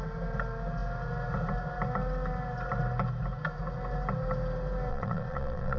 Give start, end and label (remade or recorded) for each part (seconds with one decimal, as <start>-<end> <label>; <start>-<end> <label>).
0.0-4.9 recorded; 4.9-5.8 remade